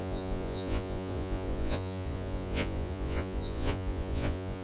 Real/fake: fake